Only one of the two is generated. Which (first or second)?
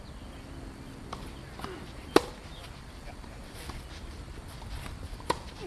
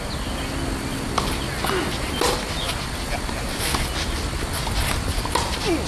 first